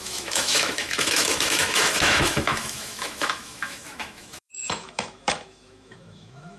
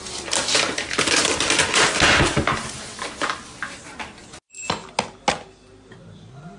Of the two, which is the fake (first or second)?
first